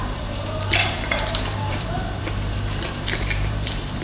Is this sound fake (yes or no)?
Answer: yes